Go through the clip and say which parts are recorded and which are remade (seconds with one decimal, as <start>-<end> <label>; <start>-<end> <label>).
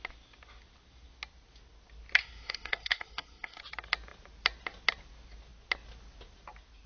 0.0-2.2 recorded; 2.2-3.6 remade; 3.6-6.9 recorded